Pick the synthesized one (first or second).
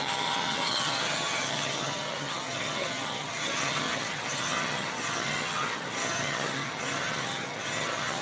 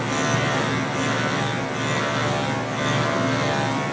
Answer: first